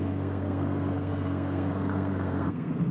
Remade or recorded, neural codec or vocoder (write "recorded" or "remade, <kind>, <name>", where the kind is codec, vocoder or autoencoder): remade, codec, SNAC